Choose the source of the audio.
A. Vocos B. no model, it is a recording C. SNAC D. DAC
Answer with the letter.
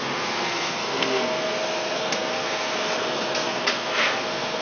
C